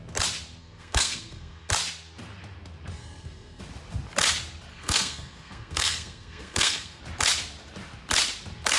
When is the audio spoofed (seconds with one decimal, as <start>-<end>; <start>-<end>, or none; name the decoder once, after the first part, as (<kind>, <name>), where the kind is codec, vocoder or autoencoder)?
0.6-1.7 (codec, SNAC); 3.0-3.6; 4.7-7.0